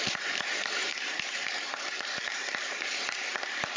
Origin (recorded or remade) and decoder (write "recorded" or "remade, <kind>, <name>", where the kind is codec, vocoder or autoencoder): remade, vocoder, BigVGAN v2